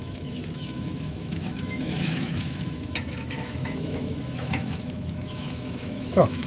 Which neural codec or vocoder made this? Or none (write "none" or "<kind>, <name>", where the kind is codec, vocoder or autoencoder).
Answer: autoencoder, DAC-VAE